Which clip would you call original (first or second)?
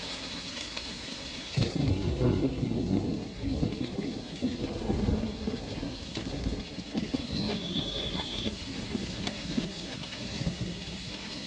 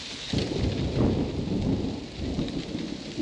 second